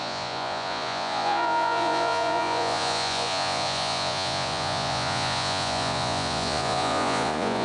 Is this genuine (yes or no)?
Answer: no